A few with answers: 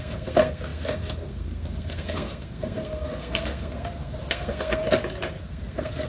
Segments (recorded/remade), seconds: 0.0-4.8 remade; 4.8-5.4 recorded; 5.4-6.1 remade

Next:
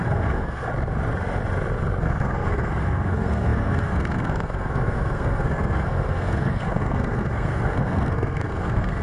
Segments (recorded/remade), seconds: 0.0-0.7 remade; 0.7-2.0 recorded; 2.0-9.0 remade

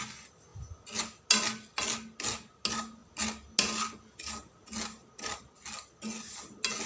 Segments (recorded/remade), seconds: 0.0-6.9 recorded

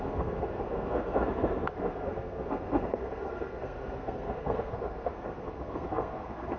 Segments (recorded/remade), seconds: 0.0-6.6 remade

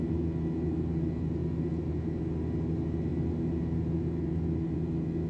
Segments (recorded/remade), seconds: 0.0-5.3 recorded

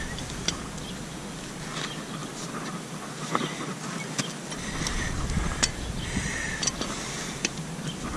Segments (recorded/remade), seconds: 0.0-8.2 recorded